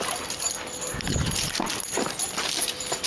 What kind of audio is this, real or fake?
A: fake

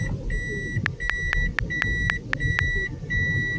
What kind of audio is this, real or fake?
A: real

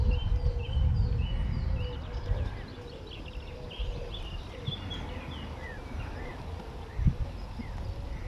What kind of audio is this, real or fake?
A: real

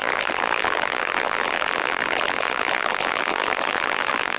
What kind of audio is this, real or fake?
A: fake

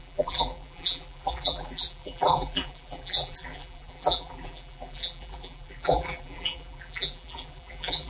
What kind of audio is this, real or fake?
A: fake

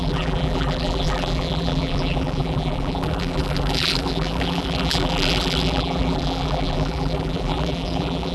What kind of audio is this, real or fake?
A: fake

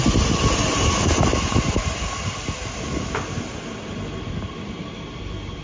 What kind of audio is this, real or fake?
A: real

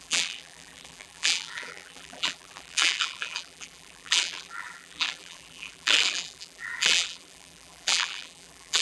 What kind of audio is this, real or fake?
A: fake